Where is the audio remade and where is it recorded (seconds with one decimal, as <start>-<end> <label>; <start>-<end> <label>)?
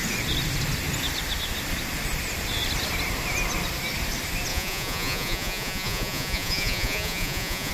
0.0-4.5 recorded; 4.5-7.7 remade